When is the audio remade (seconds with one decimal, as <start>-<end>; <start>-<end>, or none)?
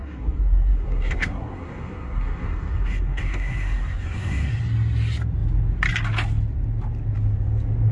0.0-4.6